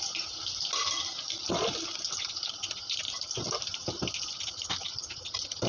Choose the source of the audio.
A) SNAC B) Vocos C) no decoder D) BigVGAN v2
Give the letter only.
C